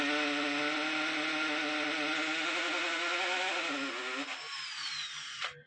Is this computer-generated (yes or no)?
no